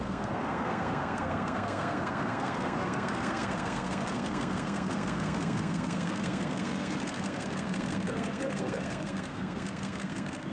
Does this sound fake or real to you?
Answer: fake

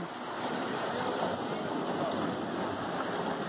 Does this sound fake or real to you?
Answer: real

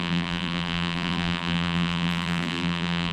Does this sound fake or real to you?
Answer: fake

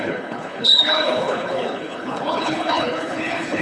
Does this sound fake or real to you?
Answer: fake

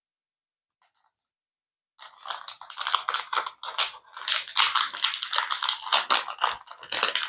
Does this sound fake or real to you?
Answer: real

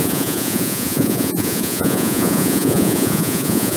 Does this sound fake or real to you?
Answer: fake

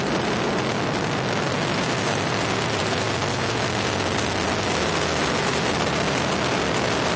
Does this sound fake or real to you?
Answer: real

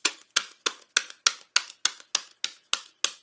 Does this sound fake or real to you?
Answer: real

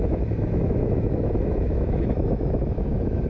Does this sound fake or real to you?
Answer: fake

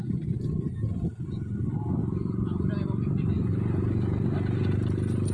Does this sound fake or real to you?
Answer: real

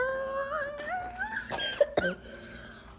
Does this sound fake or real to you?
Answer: real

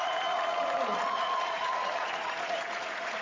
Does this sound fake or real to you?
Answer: fake